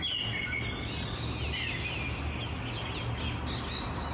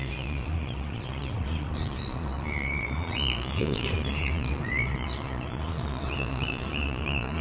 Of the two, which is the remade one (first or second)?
second